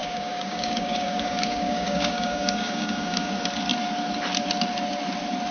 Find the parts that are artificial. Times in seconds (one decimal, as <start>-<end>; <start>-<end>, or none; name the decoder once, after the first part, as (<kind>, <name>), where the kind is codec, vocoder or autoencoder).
0.0-3.3 (codec, DAC)